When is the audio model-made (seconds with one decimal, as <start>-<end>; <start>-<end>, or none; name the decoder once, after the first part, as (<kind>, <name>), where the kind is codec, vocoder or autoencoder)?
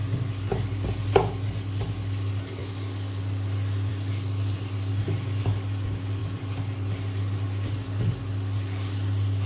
none